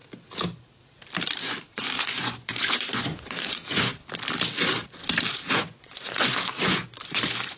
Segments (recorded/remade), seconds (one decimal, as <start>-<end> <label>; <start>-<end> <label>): 0.0-1.4 recorded; 1.4-4.0 remade; 4.0-5.3 recorded; 5.3-7.6 remade